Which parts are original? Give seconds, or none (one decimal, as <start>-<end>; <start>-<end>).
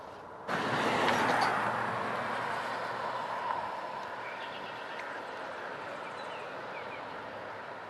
0.0-7.9